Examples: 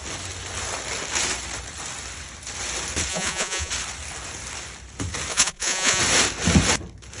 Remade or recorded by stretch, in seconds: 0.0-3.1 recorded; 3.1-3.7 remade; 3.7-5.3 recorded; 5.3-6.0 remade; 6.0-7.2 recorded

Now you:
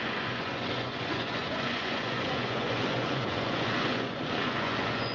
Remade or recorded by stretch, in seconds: 0.0-5.1 remade

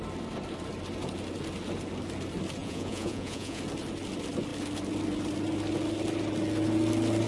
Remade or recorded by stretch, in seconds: 0.0-2.6 recorded; 2.6-3.6 remade; 3.6-7.3 recorded

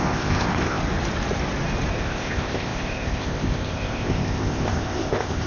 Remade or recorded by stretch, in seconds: 0.0-0.8 remade; 0.8-1.9 recorded; 1.9-5.5 remade

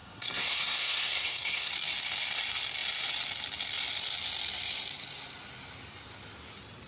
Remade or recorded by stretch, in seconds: 0.0-1.7 remade; 1.7-6.9 recorded

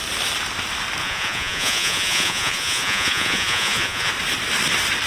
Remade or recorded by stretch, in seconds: 0.0-1.0 recorded; 1.0-4.1 remade; 4.1-5.1 recorded

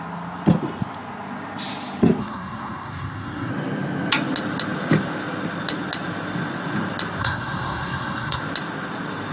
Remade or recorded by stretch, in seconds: 0.0-2.2 recorded; 2.2-3.5 remade; 3.5-7.2 recorded; 7.2-8.4 remade; 8.4-9.3 recorded